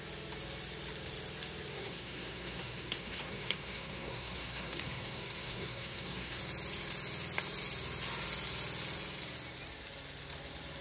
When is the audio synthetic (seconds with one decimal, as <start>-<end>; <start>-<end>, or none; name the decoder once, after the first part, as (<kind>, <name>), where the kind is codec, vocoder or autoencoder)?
1.7-6.4 (codec, SNAC)